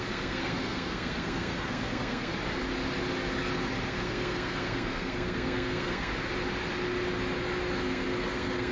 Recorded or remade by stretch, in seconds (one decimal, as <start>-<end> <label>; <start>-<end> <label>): 0.0-2.3 remade; 2.3-3.8 recorded; 3.8-6.1 remade; 6.1-7.7 recorded; 7.7-8.7 remade